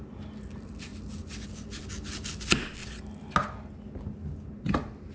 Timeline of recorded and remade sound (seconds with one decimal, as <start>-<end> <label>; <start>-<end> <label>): 0.0-5.1 recorded